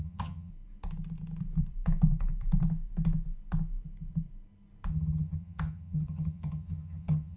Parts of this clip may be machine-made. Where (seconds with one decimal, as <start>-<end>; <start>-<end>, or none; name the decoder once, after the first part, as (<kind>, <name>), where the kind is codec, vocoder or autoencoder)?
0.0-0.5 (vocoder, HiFi-GAN); 4.9-7.4

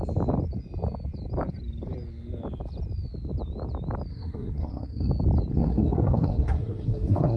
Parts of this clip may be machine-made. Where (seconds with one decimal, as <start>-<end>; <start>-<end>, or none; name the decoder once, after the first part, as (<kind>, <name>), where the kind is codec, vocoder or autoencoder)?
4.1-5.1 (codec, SNAC); 5.5-7.4

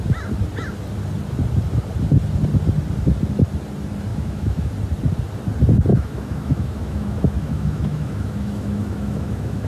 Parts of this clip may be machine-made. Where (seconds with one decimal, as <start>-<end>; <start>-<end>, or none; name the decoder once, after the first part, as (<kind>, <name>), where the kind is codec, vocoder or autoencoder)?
4.1-4.7 (autoencoder, DAC-VAE); 5.9-9.7